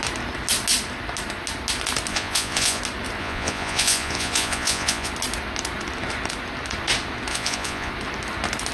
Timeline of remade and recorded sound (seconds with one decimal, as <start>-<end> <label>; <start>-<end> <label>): 0.0-2.1 recorded; 2.1-2.8 remade; 2.8-3.2 recorded; 3.2-5.1 remade; 5.1-7.3 recorded; 7.3-7.9 remade; 7.9-8.7 recorded